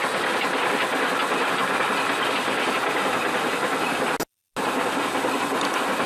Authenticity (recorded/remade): recorded